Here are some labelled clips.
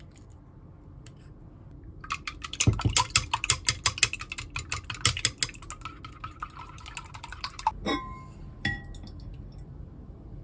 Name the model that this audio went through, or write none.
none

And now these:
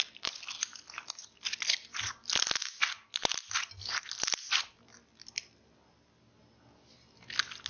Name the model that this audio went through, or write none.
none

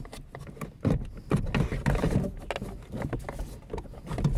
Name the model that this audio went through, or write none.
none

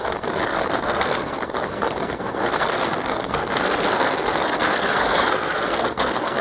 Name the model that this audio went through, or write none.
codec, SNAC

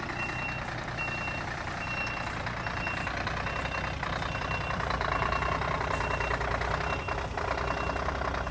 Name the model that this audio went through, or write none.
none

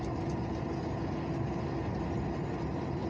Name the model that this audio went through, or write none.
none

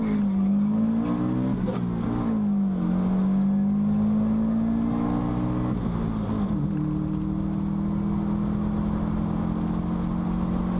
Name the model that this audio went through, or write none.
none